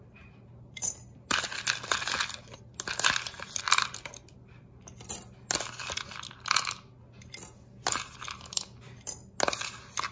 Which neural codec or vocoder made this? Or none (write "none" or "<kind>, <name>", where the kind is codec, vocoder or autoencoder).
none